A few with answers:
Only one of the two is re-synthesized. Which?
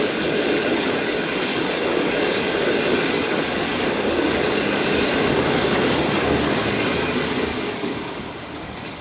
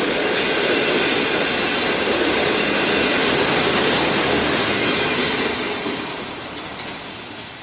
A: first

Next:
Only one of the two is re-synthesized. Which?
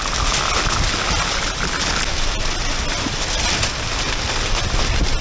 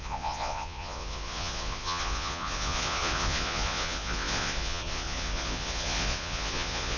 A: second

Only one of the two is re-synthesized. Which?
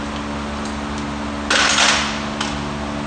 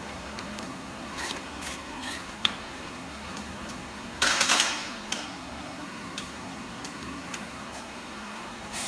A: second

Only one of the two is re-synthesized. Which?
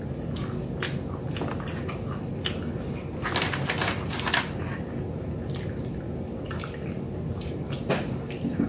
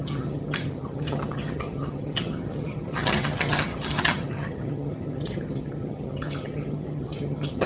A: second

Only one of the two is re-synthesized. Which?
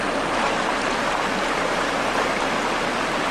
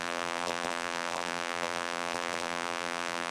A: second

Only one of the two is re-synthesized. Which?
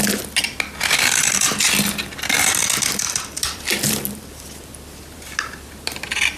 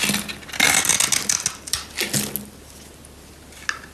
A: first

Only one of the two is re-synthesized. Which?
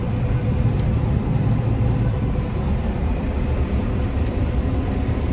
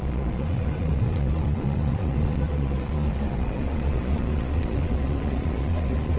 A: second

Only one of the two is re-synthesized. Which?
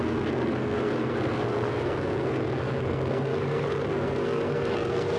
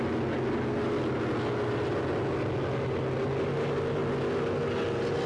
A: first